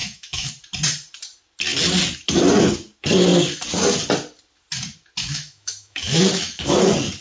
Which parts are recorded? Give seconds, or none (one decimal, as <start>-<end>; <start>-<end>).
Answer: 0.5-5.2; 6.6-7.2